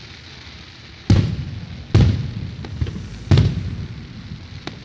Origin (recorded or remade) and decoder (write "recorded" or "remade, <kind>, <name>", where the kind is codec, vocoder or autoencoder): recorded